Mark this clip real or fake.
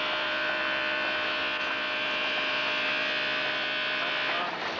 real